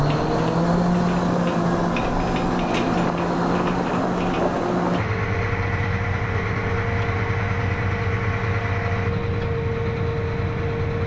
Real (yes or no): yes